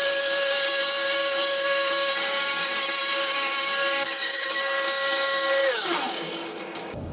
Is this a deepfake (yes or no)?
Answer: yes